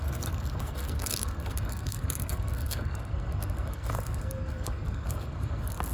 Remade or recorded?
remade